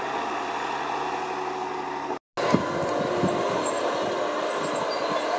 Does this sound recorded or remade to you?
recorded